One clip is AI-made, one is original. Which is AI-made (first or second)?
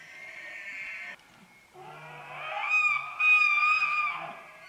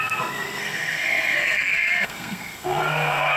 second